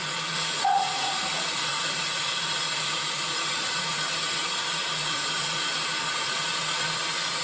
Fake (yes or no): yes